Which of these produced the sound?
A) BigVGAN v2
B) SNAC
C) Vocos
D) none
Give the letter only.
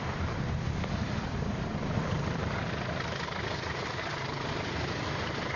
A